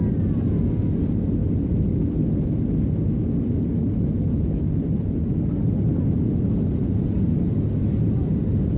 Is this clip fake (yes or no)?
no